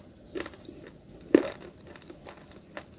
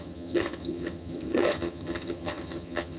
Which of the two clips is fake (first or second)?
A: second